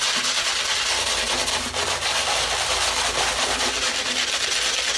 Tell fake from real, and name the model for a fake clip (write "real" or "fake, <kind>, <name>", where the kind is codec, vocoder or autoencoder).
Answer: real